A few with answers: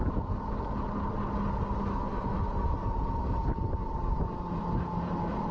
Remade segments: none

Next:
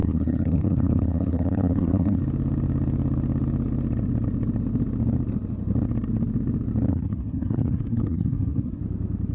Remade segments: 0.0-2.2 (codec, SNAC); 6.9-8.8

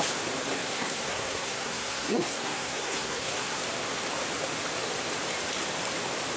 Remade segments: 0.5-3.6 (codec, SNAC)

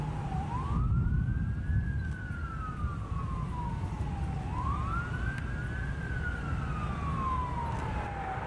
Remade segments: none

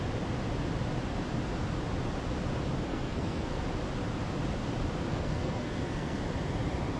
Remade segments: 2.9-3.6 (codec, SNAC); 5.1-6.2

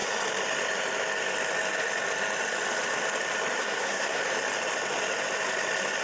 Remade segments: 3.6-4.2 (codec, SNAC)

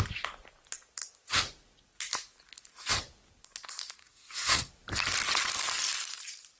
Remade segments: 4.0-4.7 (codec, SNAC)

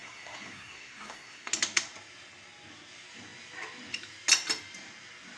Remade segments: 0.0-1.5 (codec, SNAC)